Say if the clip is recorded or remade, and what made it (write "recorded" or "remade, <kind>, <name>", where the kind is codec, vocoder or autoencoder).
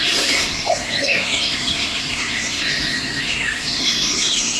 remade, codec, SNAC